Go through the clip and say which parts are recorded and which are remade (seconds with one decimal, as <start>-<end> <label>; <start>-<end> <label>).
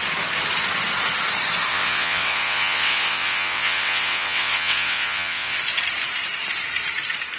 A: 0.0-1.7 recorded; 1.7-5.6 remade; 5.6-7.4 recorded